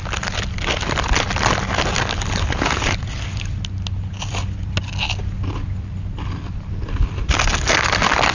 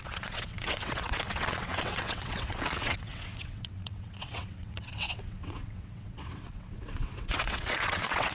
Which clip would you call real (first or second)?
first